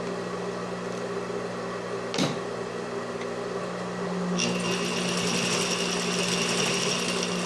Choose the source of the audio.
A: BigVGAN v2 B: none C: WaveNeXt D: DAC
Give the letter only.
B